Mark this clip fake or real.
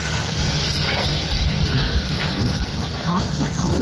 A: fake